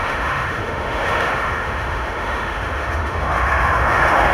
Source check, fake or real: fake